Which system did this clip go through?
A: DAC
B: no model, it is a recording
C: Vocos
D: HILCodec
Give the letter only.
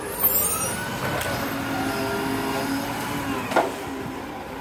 B